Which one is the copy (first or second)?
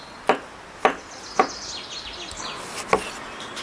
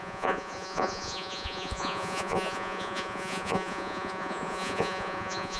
second